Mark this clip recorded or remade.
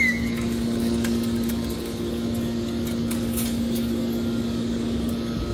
remade